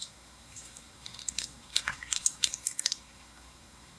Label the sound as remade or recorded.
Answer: remade